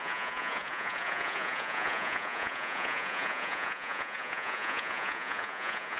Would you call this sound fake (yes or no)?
yes